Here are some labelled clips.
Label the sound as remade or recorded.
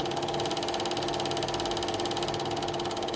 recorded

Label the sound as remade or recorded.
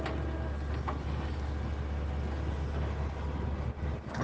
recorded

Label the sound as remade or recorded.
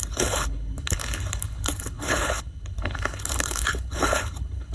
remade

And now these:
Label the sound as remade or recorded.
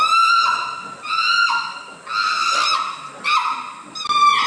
recorded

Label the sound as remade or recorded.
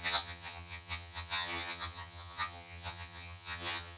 remade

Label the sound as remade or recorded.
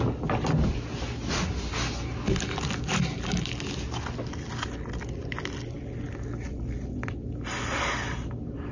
recorded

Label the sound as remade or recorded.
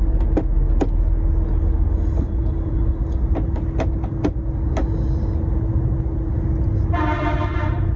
recorded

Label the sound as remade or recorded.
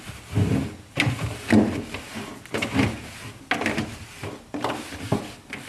recorded